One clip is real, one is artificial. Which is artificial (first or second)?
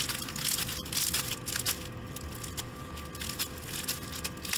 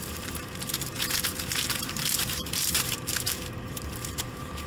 second